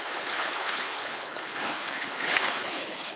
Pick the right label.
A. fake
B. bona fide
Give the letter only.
A